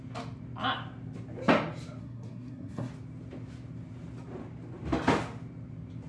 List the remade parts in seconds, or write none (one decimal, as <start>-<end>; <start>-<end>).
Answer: 2.0-2.9